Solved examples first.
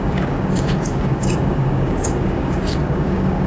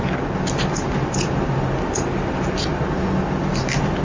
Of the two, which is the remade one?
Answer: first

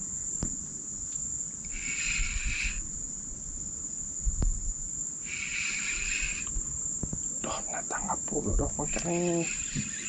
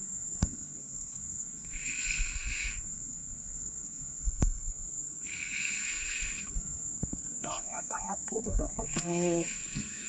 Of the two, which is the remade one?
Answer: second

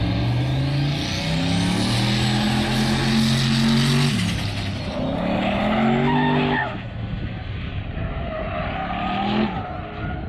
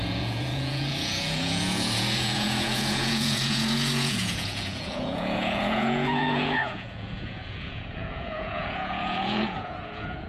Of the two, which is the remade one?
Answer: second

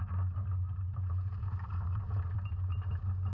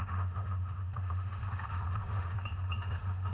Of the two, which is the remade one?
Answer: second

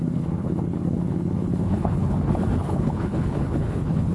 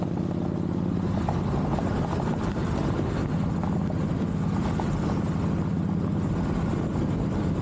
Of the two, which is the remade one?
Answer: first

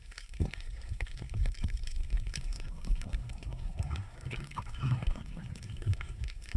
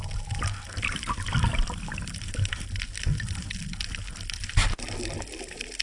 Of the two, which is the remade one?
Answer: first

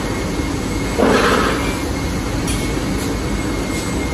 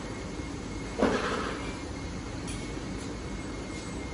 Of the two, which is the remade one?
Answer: second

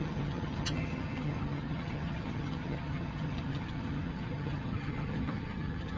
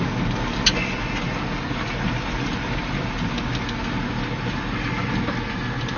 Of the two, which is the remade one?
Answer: first